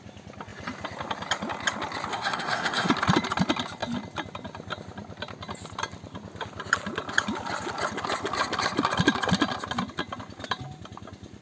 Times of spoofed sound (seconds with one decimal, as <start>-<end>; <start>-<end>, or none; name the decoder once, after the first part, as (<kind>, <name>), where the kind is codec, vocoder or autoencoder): 2.1-2.9 (codec, SNAC)